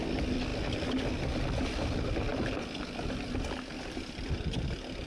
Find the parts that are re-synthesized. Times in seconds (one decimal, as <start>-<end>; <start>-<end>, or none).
none